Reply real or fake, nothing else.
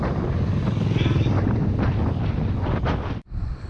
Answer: real